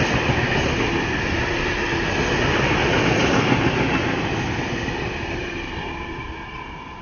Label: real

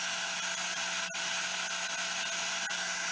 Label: real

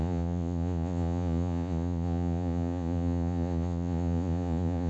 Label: fake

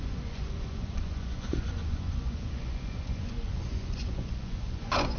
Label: fake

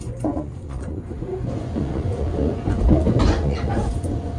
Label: fake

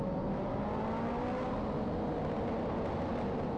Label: real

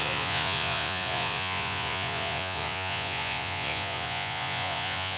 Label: fake